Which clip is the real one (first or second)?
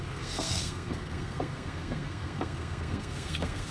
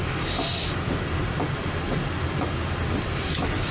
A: second